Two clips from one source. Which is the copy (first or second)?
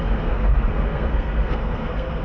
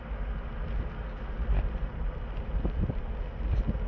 first